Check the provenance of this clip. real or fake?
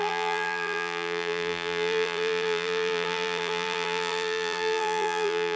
fake